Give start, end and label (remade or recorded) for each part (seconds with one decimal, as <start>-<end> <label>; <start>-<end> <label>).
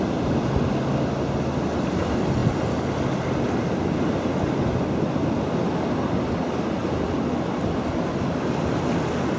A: 0.0-9.4 recorded